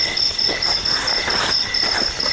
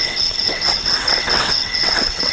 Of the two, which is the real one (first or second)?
first